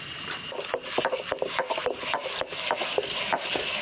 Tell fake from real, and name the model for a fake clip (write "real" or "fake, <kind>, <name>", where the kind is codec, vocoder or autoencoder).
real